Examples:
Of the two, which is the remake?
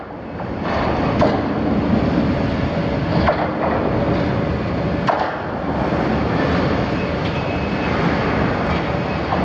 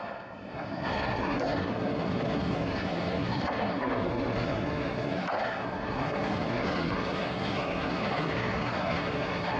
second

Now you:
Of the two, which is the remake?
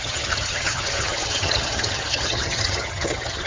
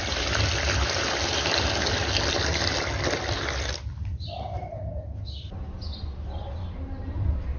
first